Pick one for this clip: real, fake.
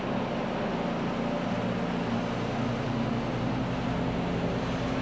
real